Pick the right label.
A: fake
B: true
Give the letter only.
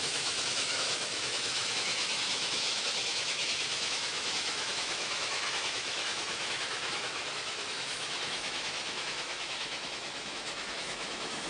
A